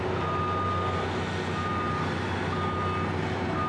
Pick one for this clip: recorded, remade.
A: recorded